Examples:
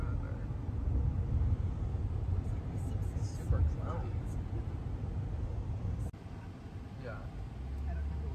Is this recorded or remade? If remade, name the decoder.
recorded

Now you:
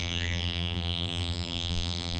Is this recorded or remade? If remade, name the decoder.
remade, vocoder, BigVGAN v2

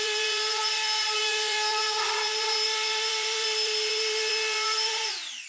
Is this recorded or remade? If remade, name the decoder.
remade, vocoder, BigVGAN v2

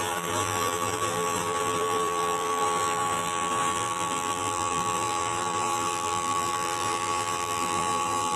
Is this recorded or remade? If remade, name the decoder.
remade, vocoder, BigVGAN v2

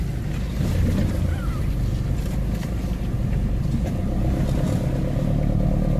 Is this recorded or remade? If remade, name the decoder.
recorded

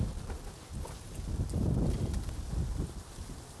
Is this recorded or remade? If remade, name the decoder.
recorded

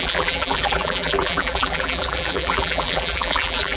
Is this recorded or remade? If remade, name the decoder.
remade, vocoder, BigVGAN v2